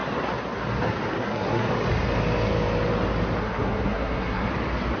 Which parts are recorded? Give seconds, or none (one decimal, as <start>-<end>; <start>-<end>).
0.0-1.2; 1.7-3.4; 4.5-5.0